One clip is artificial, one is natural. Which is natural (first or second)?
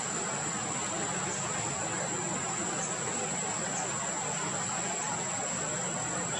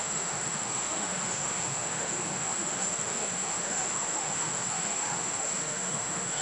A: first